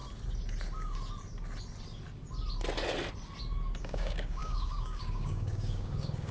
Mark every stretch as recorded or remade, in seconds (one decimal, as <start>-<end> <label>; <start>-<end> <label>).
0.0-3.8 recorded; 3.8-6.3 remade